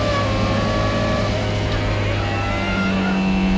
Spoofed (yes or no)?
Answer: no